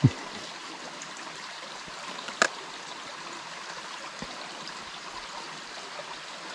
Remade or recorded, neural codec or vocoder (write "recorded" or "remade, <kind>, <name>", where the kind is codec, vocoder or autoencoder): recorded